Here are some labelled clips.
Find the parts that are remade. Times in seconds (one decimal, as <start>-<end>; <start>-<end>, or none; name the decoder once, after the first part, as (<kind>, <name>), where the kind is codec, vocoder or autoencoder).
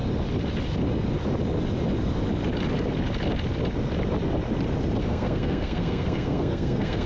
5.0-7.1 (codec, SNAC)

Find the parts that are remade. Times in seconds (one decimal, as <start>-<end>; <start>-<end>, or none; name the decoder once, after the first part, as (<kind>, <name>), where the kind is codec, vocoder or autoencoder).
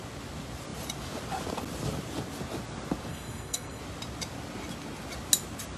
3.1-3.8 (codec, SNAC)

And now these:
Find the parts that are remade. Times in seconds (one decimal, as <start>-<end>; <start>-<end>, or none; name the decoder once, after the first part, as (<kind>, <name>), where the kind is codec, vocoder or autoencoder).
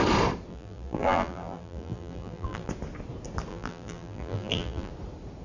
0.5-2.7 (vocoder, BigVGAN v2); 3.5-4.9